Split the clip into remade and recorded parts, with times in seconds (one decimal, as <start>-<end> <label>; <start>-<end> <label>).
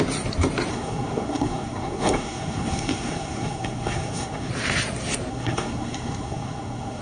0.0-0.7 recorded; 0.7-4.5 remade; 4.5-5.3 recorded; 5.3-7.0 remade